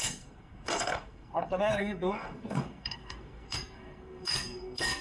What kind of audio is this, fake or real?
fake